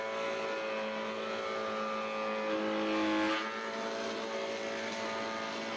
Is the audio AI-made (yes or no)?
no